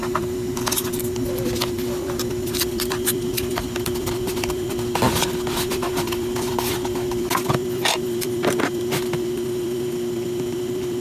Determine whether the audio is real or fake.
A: fake